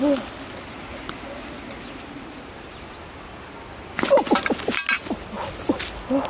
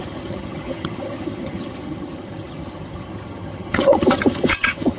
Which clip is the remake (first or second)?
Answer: second